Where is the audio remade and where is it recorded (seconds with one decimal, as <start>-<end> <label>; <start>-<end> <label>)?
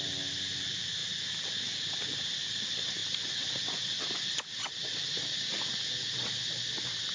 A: 0.0-7.1 recorded